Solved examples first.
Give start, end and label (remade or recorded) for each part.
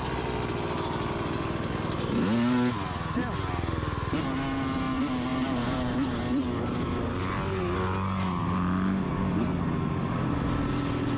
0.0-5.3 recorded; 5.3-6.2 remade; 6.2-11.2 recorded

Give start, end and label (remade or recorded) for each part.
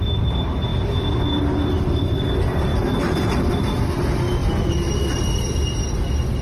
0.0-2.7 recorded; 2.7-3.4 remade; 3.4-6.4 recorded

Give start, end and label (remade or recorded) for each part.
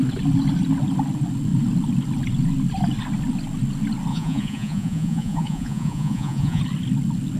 0.0-4.1 recorded; 4.1-6.6 remade; 6.6-7.4 recorded